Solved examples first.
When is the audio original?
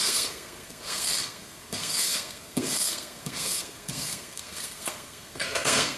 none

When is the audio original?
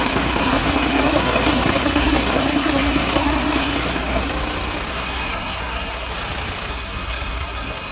4.3-4.9; 6.1-6.7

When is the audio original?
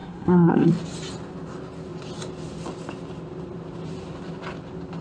0.7-5.0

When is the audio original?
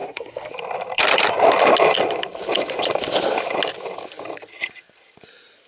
0.5-5.7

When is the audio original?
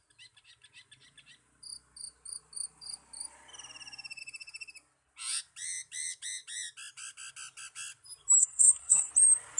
0.0-8.4; 9.1-9.6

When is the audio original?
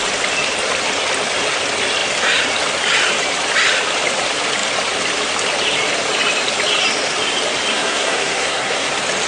0.0-7.7; 8.9-9.3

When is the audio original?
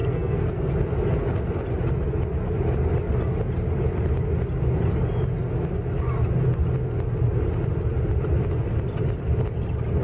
0.7-10.0